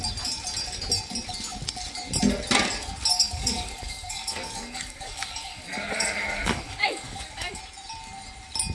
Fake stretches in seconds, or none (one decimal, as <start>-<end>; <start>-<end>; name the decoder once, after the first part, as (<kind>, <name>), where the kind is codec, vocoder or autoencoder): 3.1-7.6 (codec, DAC)